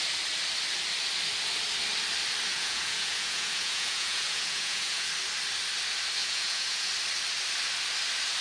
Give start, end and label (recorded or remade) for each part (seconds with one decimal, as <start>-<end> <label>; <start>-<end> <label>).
0.0-2.5 recorded; 2.5-5.1 remade; 5.1-6.2 recorded; 6.2-6.9 remade; 6.9-8.4 recorded